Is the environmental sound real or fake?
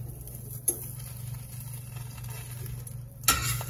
real